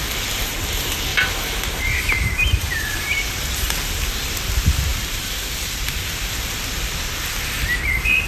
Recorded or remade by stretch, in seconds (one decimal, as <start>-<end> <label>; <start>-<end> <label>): 0.0-1.1 recorded; 1.1-3.7 remade; 3.7-4.9 recorded; 4.9-6.4 remade; 6.4-8.3 recorded